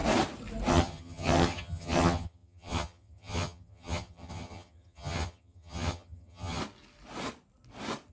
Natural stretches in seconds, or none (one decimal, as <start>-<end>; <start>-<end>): 0.0-0.7; 6.6-8.1